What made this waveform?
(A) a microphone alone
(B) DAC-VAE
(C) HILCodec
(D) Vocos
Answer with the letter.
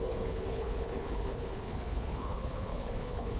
C